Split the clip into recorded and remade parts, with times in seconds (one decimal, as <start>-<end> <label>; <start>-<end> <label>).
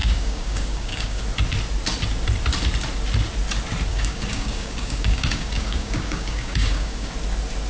0.0-1.2 remade; 1.2-3.9 recorded; 3.9-7.1 remade; 7.1-7.7 recorded